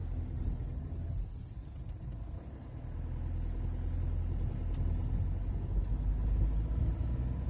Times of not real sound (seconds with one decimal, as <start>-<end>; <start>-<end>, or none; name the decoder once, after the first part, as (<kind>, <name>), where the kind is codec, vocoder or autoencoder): none